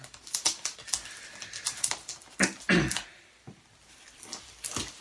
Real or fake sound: real